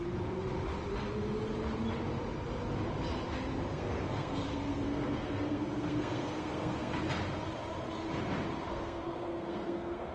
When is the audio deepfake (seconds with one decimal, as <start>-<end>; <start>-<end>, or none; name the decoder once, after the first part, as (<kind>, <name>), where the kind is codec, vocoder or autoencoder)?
3.7-7.0 (codec, SNAC); 8.7-10.1